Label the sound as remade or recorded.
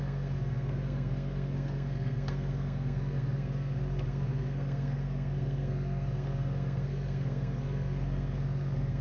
remade